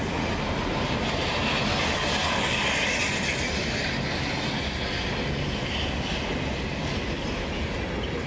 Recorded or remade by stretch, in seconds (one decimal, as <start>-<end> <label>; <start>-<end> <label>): 0.0-8.3 recorded